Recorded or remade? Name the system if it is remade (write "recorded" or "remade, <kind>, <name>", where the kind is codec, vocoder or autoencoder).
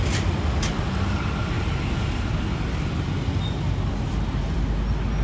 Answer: recorded